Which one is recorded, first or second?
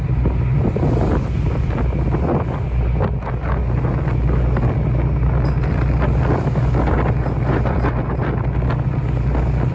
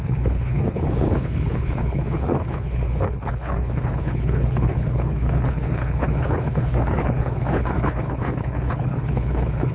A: first